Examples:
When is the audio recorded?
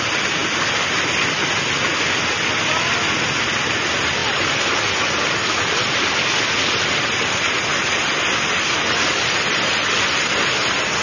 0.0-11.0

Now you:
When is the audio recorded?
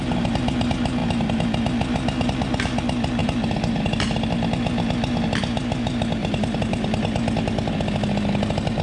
0.0-3.2; 3.8-6.2; 7.0-8.8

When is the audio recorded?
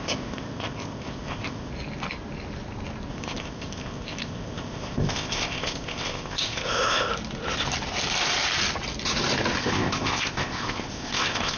1.7-3.1; 7.1-9.6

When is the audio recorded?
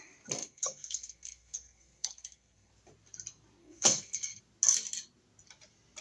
0.0-0.4; 2.7-3.6; 4.4-6.0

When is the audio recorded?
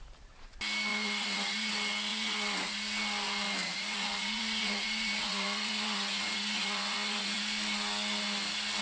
0.0-0.9; 1.7-2.1; 2.7-3.6; 7.4-8.8